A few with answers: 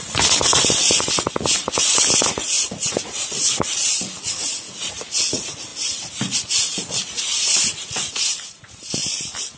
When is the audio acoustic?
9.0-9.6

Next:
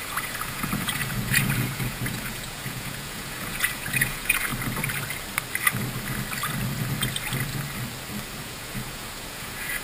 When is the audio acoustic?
4.5-8.4

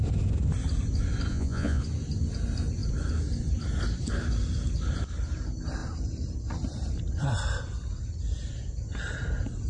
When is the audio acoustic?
0.0-1.3; 1.8-9.7

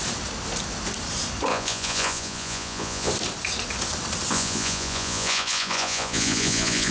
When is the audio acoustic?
0.0-1.5; 3.1-4.3

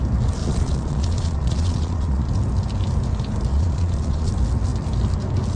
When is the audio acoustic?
0.0-0.4; 2.3-3.5; 4.3-5.6

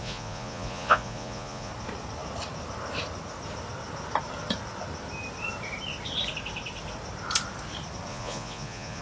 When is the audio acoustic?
1.7-8.1

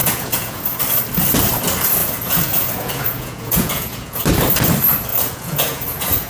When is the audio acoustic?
0.8-2.0; 4.2-5.1